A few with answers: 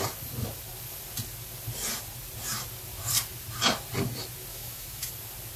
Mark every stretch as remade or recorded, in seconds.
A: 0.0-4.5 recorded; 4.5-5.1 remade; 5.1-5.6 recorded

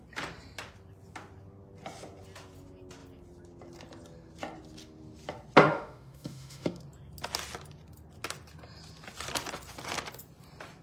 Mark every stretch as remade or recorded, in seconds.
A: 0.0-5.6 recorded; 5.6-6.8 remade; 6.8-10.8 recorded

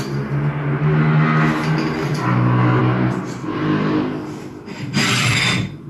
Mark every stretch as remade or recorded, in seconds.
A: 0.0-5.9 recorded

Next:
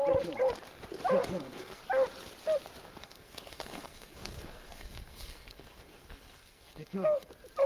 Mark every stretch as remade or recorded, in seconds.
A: 0.0-1.2 recorded; 1.2-1.8 remade; 1.8-3.0 recorded; 3.0-7.3 remade; 7.3-7.7 recorded